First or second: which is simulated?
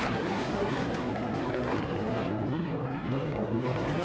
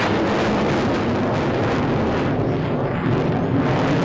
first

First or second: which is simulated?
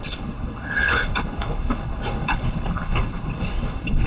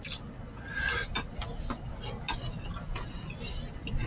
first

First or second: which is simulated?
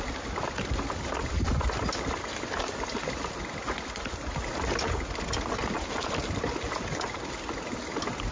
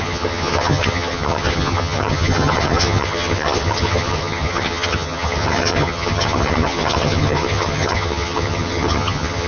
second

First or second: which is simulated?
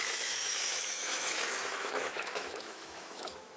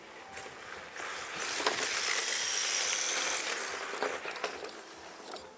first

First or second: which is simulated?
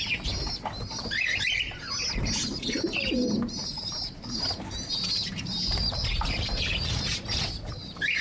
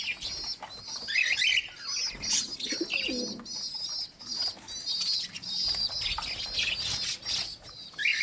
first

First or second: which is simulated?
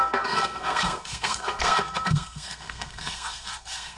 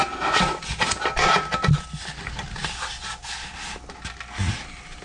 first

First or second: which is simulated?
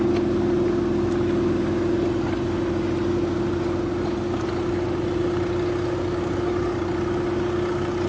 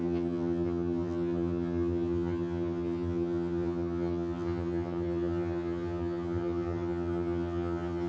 second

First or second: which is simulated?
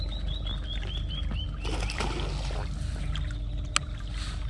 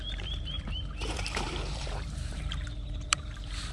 second